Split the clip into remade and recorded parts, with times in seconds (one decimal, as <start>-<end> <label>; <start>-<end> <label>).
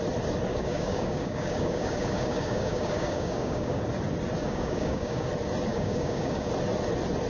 0.0-0.5 recorded; 0.5-3.8 remade; 3.8-4.4 recorded; 4.4-5.3 remade; 5.3-5.7 recorded; 5.7-6.5 remade; 6.5-7.3 recorded